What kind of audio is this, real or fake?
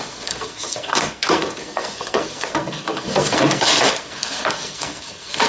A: fake